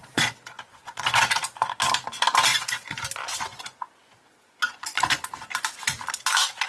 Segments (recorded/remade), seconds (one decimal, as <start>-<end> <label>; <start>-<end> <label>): 0.0-1.8 remade; 1.8-2.5 recorded; 2.5-3.0 remade; 3.0-3.5 recorded; 3.5-5.3 remade; 5.3-6.7 recorded